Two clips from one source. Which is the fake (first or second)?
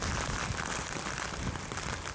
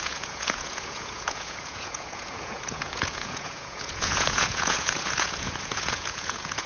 second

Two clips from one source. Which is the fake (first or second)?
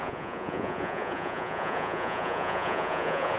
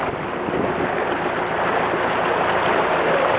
first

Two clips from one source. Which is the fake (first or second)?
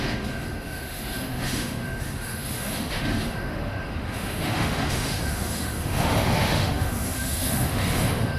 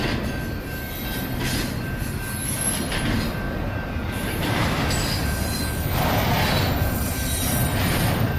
first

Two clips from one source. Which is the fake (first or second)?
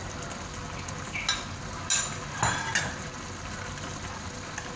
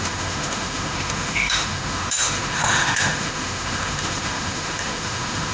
second